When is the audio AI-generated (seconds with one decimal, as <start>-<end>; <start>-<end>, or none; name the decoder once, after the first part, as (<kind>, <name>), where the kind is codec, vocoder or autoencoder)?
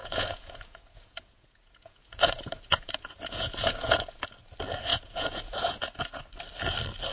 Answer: 0.0-4.3 (vocoder, Vocos); 4.9-6.2